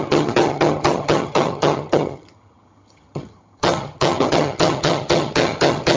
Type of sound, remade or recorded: remade